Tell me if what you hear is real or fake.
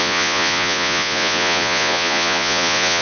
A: fake